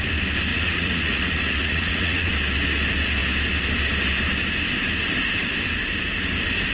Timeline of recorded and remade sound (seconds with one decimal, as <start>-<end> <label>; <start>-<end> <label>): 0.0-0.5 recorded; 0.5-2.3 remade; 2.3-6.7 recorded